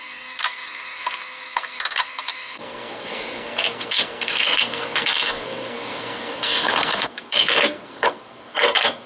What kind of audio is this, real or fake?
fake